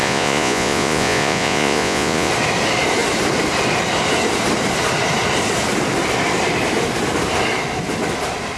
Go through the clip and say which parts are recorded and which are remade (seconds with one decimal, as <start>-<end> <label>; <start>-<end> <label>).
0.0-2.3 remade; 2.3-8.6 recorded

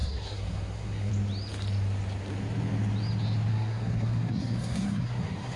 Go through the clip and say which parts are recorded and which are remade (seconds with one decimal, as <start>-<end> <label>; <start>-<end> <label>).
0.0-1.1 remade; 1.1-3.5 recorded; 3.5-5.6 remade

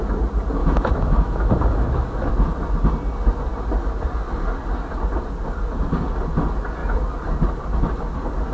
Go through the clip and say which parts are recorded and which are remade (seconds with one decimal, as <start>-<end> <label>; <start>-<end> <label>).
0.0-0.6 recorded; 0.6-2.3 remade; 2.3-8.5 recorded

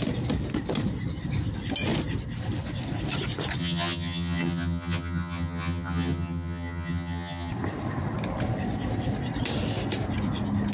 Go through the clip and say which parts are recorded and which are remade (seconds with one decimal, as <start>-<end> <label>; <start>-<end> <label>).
0.0-3.6 recorded; 3.6-7.5 remade; 7.5-10.7 recorded

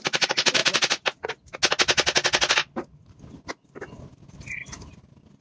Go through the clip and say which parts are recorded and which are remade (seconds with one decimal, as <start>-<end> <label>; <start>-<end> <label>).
0.0-5.4 recorded

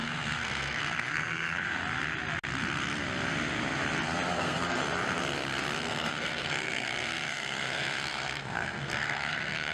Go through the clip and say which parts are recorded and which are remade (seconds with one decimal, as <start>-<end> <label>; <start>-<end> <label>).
0.0-1.8 remade; 1.8-4.3 recorded; 4.3-4.8 remade; 4.8-5.9 recorded; 5.9-9.7 remade

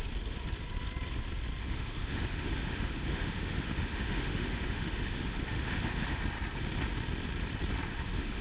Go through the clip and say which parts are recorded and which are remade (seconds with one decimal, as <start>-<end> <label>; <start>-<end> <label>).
0.0-1.6 recorded; 1.6-6.2 remade; 6.2-7.9 recorded; 7.9-8.4 remade

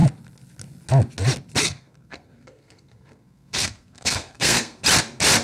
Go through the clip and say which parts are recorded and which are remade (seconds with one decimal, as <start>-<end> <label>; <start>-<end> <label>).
0.0-1.6 recorded; 1.6-4.8 remade; 4.8-5.4 recorded